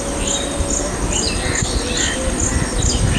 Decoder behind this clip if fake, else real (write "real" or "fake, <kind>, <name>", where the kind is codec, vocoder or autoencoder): real